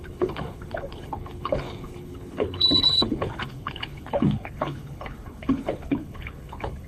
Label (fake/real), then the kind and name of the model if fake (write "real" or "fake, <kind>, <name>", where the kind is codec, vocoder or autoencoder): fake, codec, HILCodec